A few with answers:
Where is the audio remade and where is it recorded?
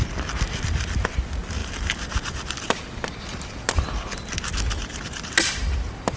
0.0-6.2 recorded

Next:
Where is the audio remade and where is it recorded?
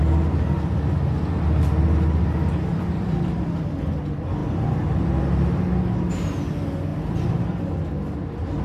0.0-2.7 recorded; 2.7-3.8 remade; 3.8-4.4 recorded; 4.4-5.0 remade; 5.0-6.9 recorded; 6.9-7.6 remade; 7.6-8.6 recorded